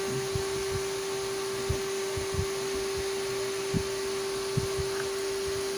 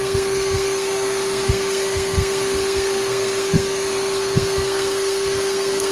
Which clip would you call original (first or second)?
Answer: first